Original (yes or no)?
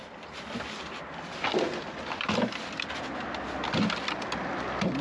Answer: yes